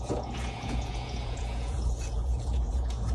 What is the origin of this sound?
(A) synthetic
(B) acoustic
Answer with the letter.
A